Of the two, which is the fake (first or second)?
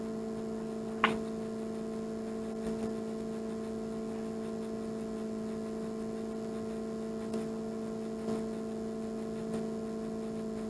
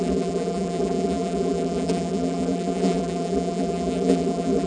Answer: second